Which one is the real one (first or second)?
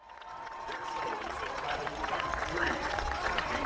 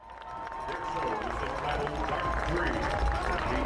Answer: second